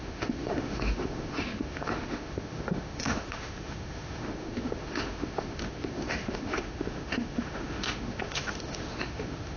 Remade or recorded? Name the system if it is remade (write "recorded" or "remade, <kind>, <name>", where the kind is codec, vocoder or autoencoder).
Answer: remade, autoencoder, DAC-VAE